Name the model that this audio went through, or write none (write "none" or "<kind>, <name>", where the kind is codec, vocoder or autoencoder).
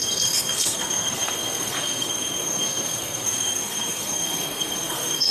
codec, SNAC